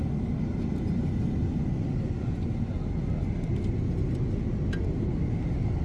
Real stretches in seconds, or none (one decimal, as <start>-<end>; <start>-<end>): 0.0-5.8

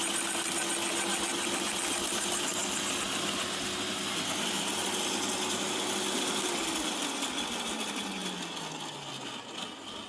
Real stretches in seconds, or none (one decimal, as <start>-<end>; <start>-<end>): 0.0-10.1